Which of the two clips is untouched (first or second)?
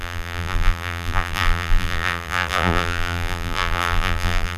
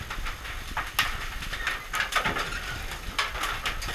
second